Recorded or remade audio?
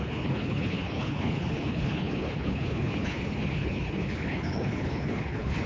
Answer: remade